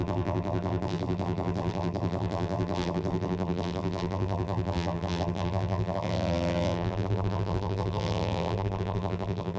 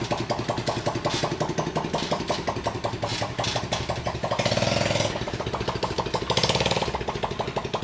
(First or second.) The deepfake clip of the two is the first